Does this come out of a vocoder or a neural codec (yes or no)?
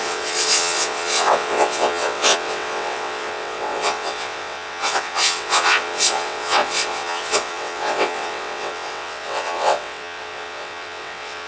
yes